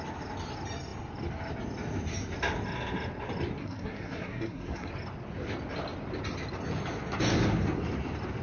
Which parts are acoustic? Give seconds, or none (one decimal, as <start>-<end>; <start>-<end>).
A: 0.0-3.6; 4.9-8.4